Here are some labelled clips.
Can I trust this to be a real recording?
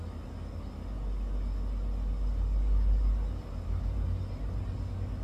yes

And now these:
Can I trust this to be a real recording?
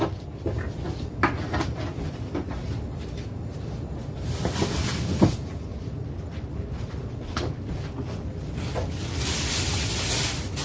yes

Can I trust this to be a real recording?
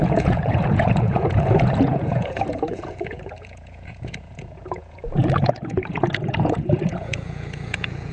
no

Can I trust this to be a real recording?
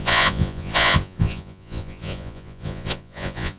no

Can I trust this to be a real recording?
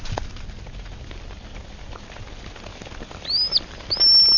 yes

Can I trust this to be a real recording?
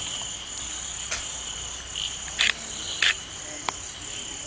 yes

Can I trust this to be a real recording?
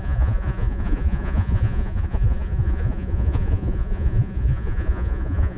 no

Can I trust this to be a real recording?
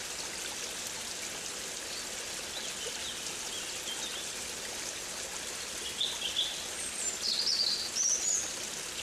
yes